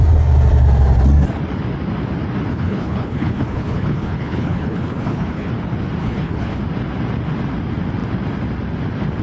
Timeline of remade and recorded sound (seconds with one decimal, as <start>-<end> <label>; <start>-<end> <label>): 0.0-2.5 recorded; 2.5-5.5 remade; 5.5-6.0 recorded; 6.0-6.6 remade; 6.6-9.2 recorded